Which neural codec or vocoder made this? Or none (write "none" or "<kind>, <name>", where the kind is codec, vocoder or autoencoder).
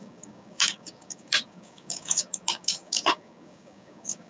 codec, DAC